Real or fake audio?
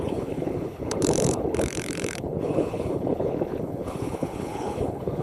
fake